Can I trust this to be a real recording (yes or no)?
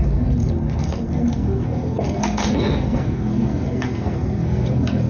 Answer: no